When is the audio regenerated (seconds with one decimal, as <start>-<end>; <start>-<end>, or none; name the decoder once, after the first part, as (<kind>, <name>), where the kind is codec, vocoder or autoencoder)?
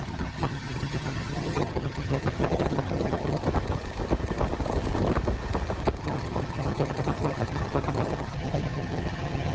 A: 0.0-3.4 (vocoder, HiFi-GAN); 6.0-9.5